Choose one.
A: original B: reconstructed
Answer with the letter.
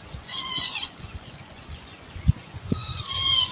B